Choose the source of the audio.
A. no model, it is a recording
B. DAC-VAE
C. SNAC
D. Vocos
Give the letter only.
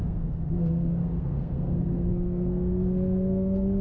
C